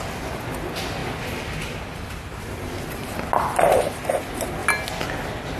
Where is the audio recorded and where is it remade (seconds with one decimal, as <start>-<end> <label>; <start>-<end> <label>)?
0.0-5.6 recorded